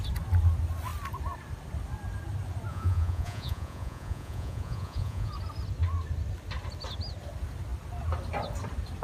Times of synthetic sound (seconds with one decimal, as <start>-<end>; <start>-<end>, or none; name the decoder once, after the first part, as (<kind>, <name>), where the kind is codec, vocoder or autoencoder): 2.7-5.3 (vocoder, Vocos)